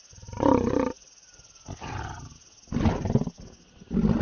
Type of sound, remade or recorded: recorded